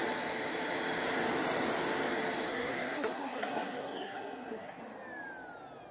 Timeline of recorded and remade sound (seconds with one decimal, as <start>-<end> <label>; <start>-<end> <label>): 0.0-2.5 recorded; 2.5-4.8 remade; 4.8-5.9 recorded